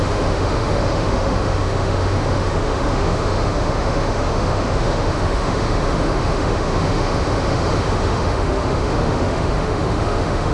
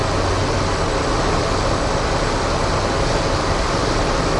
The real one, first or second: second